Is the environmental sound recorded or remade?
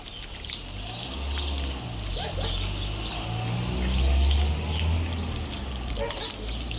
recorded